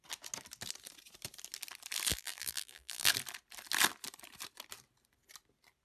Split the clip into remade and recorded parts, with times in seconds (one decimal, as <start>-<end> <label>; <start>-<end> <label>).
0.0-2.1 recorded; 2.1-3.1 remade; 3.1-5.8 recorded